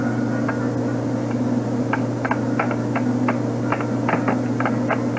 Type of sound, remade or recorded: recorded